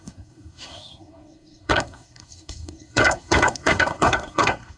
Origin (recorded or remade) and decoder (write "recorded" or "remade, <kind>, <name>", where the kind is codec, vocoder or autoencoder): remade, codec, SNAC